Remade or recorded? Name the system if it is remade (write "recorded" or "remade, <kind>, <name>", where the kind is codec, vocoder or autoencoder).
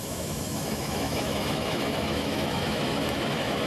remade, autoencoder, DAC-VAE